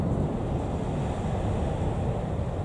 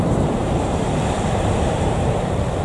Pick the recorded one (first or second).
first